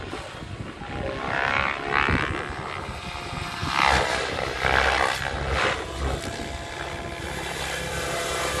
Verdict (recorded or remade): recorded